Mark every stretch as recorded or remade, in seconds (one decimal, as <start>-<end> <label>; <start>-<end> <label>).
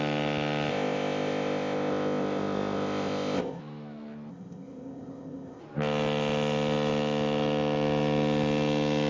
0.0-0.7 recorded; 0.7-3.6 remade; 3.6-4.3 recorded; 4.3-5.6 remade; 5.6-9.1 recorded